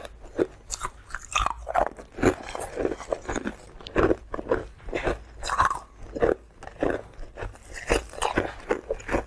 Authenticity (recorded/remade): recorded